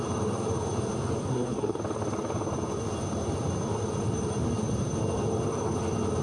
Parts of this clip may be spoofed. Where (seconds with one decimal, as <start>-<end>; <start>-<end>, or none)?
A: 1.2-1.8